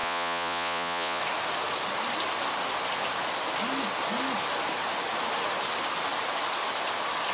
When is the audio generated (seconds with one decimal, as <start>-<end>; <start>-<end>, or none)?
0.0-1.2